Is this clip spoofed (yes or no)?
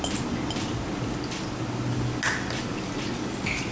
no